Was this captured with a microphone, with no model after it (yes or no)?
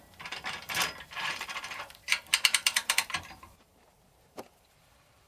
no